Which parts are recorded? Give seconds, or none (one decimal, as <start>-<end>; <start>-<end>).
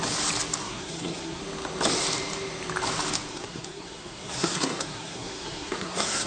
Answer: 0.0-0.6; 1.4-3.3